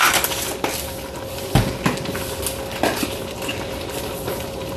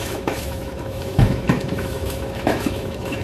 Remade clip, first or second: second